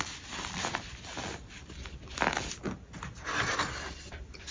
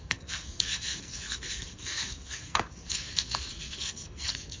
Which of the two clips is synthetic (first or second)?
second